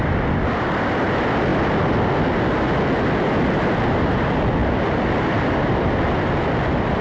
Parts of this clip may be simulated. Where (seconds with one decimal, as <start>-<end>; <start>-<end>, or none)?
none